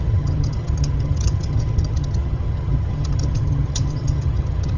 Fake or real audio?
fake